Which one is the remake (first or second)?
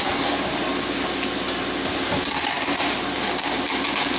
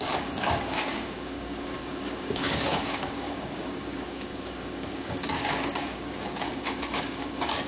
second